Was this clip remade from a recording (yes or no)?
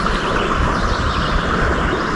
no